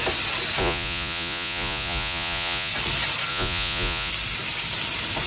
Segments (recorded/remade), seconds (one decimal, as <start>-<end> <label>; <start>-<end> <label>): 0.0-0.6 recorded; 0.6-2.7 remade; 2.7-3.3 recorded; 3.3-4.1 remade; 4.1-5.3 recorded